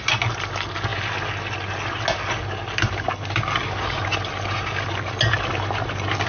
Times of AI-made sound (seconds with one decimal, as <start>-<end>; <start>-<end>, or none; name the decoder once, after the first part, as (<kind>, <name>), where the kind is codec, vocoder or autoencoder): none